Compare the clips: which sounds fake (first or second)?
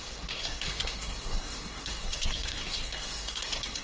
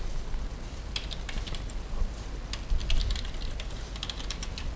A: first